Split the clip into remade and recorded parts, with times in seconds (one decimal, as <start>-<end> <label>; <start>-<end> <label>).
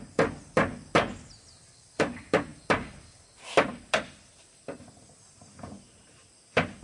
0.0-6.8 recorded